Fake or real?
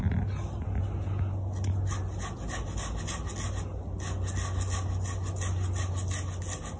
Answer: real